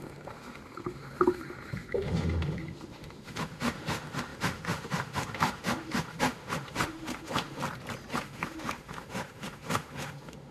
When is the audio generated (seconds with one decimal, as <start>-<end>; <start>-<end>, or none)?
0.0-7.6; 8.1-10.5